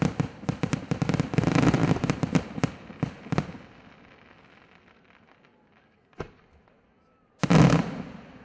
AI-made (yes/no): no